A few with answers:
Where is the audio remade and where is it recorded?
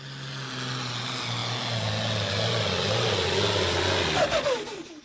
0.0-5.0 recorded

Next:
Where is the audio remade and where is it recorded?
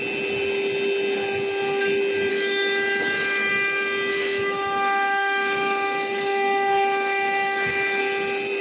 0.0-2.3 recorded; 2.3-3.5 remade; 3.5-4.1 recorded; 4.1-8.0 remade; 8.0-8.6 recorded